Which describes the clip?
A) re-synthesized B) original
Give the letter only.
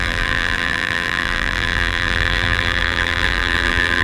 A